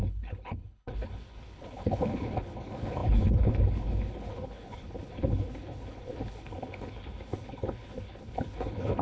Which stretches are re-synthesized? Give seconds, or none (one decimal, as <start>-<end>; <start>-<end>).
0.0-9.0